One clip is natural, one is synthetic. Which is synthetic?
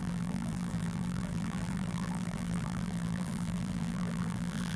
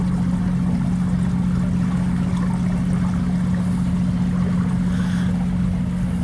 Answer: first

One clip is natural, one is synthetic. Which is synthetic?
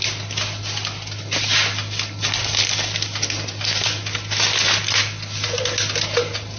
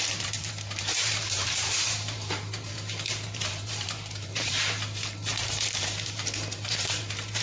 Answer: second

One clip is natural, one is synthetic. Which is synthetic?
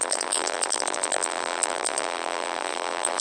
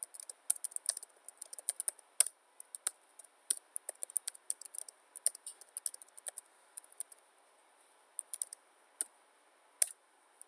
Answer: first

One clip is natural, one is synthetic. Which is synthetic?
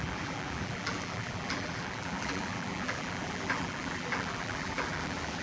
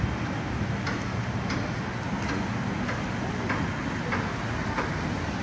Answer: first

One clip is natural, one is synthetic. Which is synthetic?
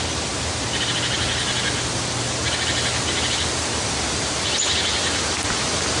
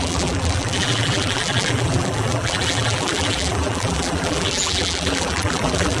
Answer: second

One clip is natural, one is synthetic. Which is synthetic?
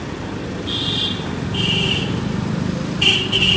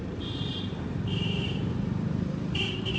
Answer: second